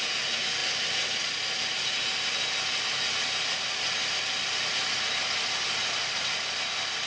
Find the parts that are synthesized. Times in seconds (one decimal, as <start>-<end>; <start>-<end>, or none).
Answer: none